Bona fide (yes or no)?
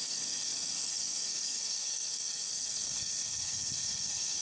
no